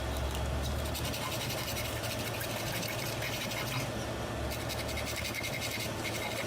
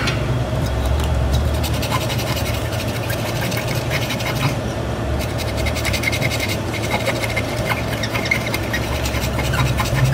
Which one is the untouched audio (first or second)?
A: first